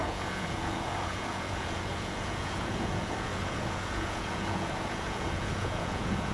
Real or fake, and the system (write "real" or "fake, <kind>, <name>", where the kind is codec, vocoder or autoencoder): fake, vocoder, Vocos